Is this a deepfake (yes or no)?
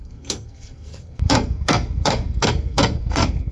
yes